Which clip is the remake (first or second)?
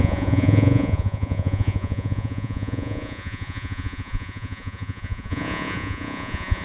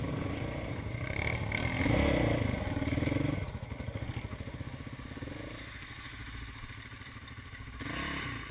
first